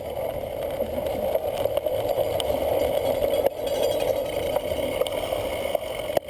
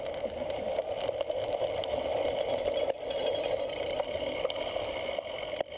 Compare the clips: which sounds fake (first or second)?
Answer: second